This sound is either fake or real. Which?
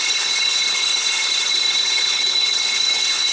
fake